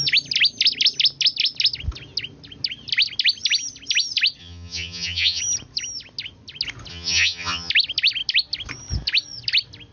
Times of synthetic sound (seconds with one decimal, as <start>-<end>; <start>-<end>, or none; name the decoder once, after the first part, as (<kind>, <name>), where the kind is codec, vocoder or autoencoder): 4.4-5.4 (vocoder, HiFi-GAN); 6.9-7.7